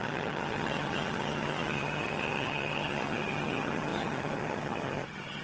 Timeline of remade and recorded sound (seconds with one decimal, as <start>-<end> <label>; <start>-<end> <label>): 0.0-5.4 remade